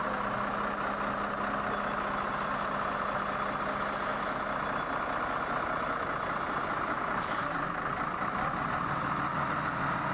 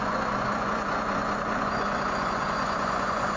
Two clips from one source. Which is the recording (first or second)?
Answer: first